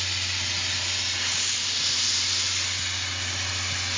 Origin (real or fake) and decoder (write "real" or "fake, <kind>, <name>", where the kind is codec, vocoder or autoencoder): real